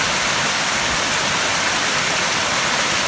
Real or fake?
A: real